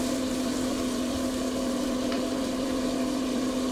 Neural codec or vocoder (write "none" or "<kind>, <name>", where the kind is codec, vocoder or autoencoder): vocoder, BigVGAN v2